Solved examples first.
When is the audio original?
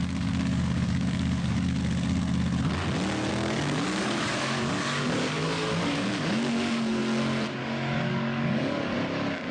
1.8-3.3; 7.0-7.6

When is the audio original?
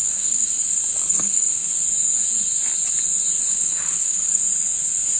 1.7-3.5; 4.4-5.2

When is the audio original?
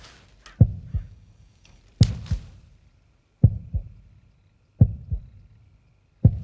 0.0-0.9; 1.8-6.4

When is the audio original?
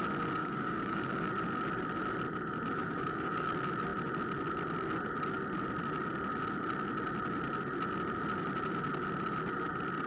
0.0-0.4; 1.3-2.8; 3.5-10.1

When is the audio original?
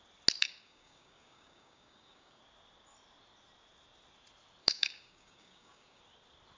0.0-0.4; 2.4-4.6; 6.0-6.6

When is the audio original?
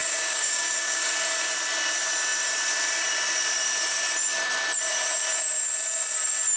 1.1-6.6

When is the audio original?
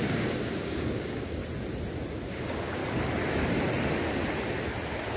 1.4-2.1; 2.8-5.2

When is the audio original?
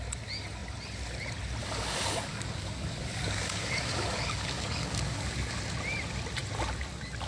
0.0-1.6; 5.6-7.3